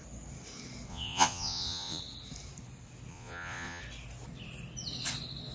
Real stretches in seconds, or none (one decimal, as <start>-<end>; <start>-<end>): 0.0-0.9; 2.0-3.1; 3.8-5.5